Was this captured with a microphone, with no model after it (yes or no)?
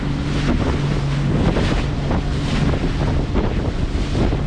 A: yes